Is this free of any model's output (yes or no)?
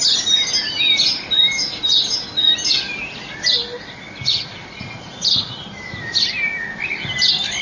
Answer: yes